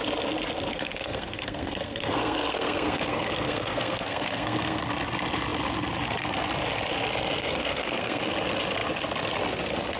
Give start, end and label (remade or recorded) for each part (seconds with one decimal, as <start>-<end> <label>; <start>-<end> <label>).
0.0-0.7 recorded; 0.7-4.8 remade; 4.8-7.4 recorded; 7.4-8.2 remade; 8.2-10.0 recorded